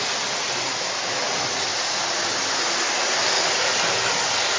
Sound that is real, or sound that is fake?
real